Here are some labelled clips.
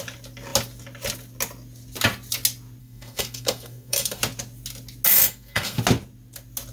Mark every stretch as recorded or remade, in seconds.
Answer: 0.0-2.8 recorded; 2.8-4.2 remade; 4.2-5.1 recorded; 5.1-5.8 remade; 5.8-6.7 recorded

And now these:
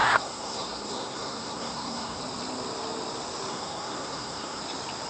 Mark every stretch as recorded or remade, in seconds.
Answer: 0.0-2.2 remade; 2.2-3.5 recorded; 3.5-4.6 remade; 4.6-5.1 recorded

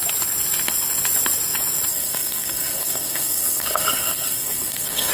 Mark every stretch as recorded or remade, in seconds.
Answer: 0.0-1.9 recorded; 1.9-5.1 remade